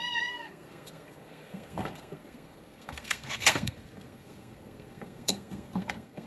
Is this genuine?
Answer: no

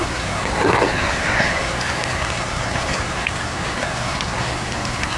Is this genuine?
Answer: no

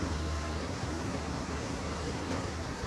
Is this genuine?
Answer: no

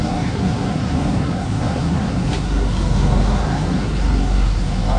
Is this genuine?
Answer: no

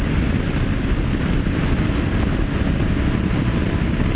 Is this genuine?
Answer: yes